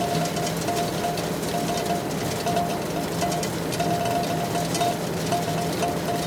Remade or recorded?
recorded